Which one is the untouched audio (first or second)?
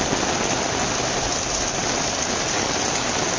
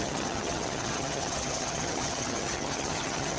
first